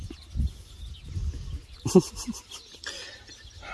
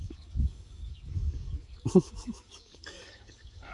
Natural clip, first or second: first